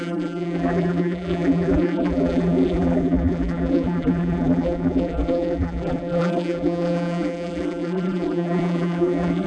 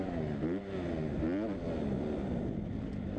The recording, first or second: second